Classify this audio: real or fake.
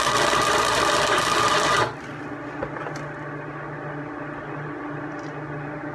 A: real